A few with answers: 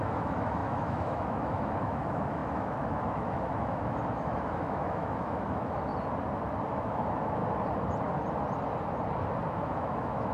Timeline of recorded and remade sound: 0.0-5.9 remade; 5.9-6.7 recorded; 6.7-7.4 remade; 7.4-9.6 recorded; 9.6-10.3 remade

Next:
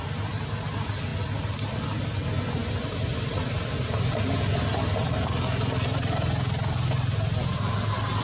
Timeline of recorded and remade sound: 0.0-8.2 recorded